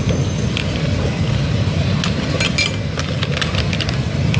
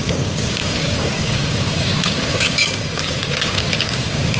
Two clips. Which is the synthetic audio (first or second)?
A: second